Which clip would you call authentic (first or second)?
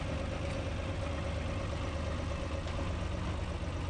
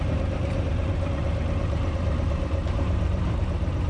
first